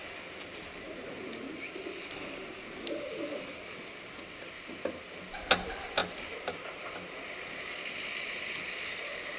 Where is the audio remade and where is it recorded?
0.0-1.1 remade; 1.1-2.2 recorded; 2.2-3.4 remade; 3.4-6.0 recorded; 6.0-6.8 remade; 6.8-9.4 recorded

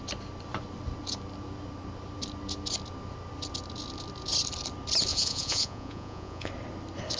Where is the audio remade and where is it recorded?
0.0-5.1 recorded; 5.1-6.5 remade; 6.5-7.2 recorded

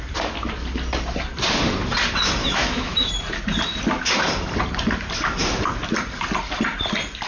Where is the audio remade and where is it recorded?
0.0-2.4 recorded; 2.4-3.1 remade; 3.1-7.3 recorded

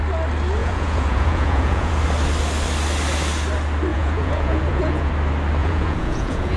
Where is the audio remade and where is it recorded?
0.0-0.6 recorded; 0.6-2.0 remade; 2.0-3.9 recorded; 3.9-5.1 remade; 5.1-5.6 recorded; 5.6-6.6 remade

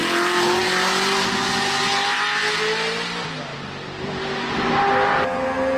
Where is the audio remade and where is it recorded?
0.0-5.8 recorded

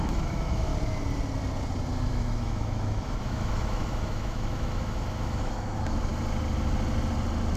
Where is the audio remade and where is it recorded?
0.0-0.7 remade; 0.7-2.1 recorded; 2.1-6.1 remade; 6.1-7.6 recorded

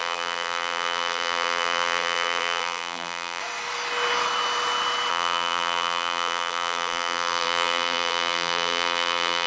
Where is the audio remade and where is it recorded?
0.0-3.4 remade; 3.4-5.1 recorded; 5.1-9.5 remade